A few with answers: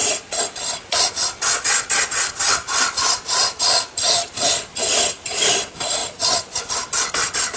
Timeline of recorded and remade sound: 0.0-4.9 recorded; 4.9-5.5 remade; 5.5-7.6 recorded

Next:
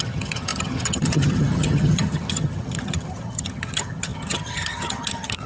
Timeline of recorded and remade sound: 0.0-5.5 remade

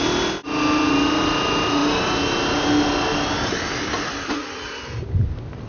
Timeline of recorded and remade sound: 0.0-5.7 recorded

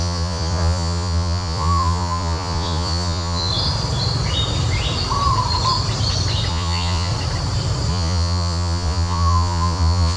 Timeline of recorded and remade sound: 0.0-3.5 remade; 3.5-6.5 recorded; 6.5-7.1 remade; 7.1-7.9 recorded; 7.9-10.2 remade

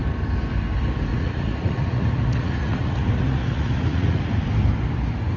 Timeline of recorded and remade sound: 0.0-1.1 recorded; 1.1-4.3 remade; 4.3-5.4 recorded

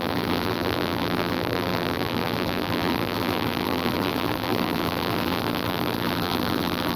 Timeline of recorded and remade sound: 0.0-7.0 remade

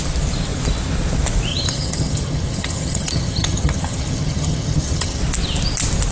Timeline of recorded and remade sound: 0.0-1.5 recorded; 1.5-5.2 remade; 5.2-6.1 recorded